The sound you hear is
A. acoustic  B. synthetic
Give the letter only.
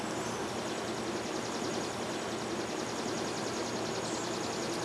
A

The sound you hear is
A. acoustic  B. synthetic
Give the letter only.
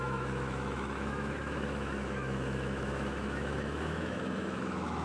B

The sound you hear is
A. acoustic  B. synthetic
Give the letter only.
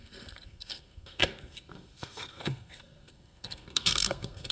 B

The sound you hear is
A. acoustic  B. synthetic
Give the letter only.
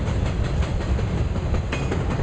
A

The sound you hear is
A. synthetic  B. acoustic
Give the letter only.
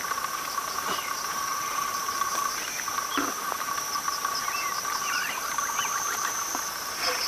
A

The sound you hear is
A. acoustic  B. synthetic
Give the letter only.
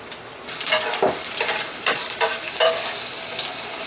A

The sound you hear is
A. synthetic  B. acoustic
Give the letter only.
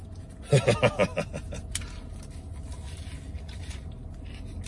B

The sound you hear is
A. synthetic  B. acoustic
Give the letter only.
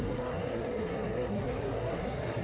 A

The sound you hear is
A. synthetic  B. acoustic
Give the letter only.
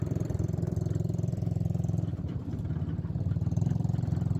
A